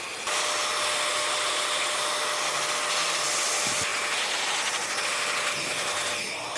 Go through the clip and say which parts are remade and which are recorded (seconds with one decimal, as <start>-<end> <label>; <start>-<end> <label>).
0.0-6.6 recorded